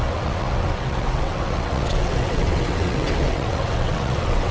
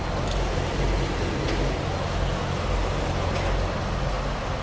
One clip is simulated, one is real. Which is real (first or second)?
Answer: second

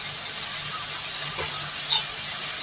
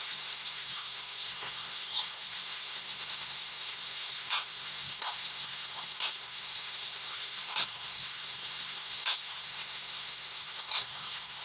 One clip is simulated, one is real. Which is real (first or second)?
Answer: first